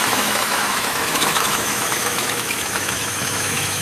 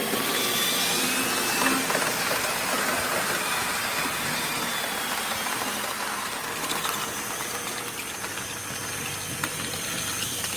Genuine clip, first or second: second